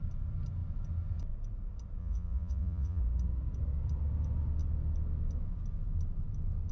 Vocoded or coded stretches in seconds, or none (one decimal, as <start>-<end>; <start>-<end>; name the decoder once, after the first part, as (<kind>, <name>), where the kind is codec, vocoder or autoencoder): 2.0-3.0 (vocoder, Vocos)